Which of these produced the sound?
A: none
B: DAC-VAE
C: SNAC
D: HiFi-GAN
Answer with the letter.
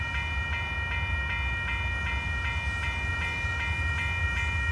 A